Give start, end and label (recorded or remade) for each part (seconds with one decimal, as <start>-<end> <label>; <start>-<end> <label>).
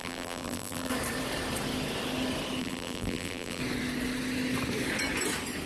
0.0-0.9 remade; 0.9-2.6 recorded; 2.6-3.6 remade; 3.6-5.7 recorded